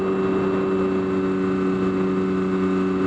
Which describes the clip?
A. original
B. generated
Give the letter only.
A